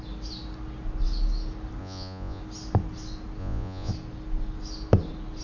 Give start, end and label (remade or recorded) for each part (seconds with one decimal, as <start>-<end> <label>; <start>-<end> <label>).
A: 0.0-1.8 recorded; 1.8-2.4 remade; 2.4-3.4 recorded; 3.4-3.9 remade; 3.9-5.4 recorded